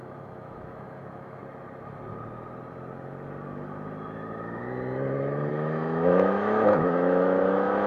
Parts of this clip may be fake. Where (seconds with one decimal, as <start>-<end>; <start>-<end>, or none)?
0.0-1.4; 5.5-7.9